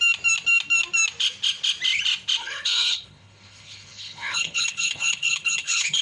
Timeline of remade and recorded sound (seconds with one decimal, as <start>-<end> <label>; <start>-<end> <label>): 0.0-2.4 recorded; 2.4-6.0 remade